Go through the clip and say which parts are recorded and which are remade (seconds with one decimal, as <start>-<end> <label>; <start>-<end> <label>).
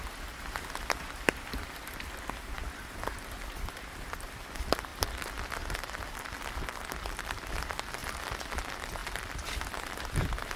0.0-4.9 remade; 4.9-6.0 recorded; 6.0-8.0 remade; 8.0-8.6 recorded; 8.6-10.6 remade